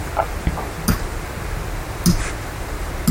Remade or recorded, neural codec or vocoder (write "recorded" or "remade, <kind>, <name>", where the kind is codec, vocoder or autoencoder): recorded